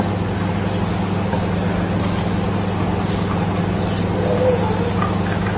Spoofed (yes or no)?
no